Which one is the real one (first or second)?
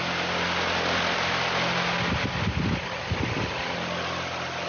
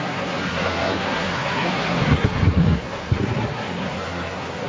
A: first